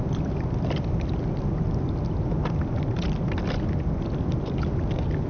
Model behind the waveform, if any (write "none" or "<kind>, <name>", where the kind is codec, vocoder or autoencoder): none